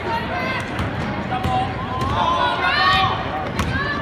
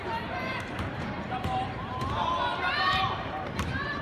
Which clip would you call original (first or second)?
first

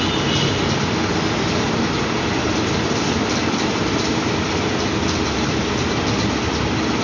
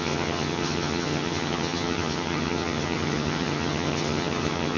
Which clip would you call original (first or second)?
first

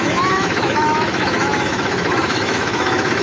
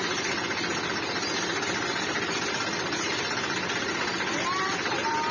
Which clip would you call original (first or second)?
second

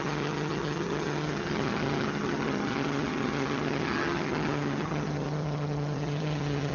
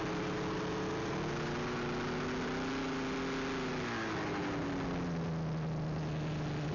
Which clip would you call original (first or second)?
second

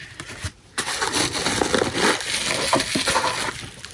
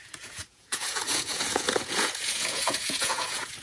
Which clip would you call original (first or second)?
first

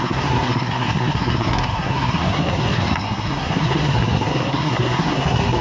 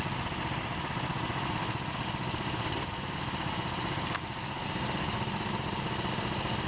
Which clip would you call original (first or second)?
second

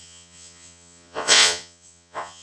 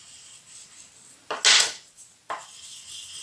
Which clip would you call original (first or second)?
second